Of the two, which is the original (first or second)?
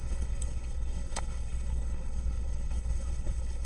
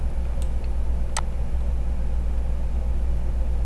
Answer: second